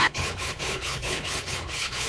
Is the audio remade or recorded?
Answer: remade